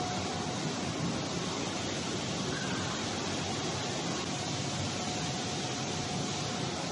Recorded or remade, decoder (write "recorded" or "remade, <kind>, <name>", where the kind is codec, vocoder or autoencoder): recorded